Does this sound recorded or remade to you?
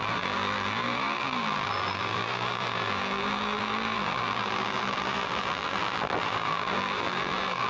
remade